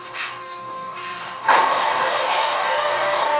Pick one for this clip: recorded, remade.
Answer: remade